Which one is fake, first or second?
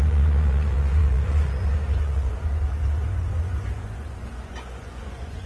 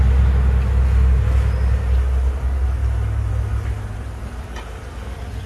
first